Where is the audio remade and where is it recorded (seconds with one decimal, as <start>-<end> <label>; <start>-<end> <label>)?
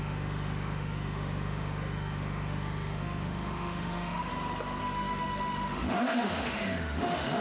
0.0-4.3 remade; 4.3-4.8 recorded; 4.8-7.4 remade